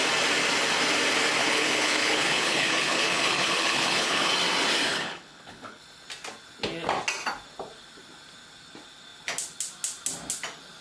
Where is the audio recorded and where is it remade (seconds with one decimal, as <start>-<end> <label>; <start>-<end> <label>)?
0.0-1.4 recorded; 1.4-4.3 remade; 4.3-4.9 recorded; 4.9-5.8 remade; 5.8-10.8 recorded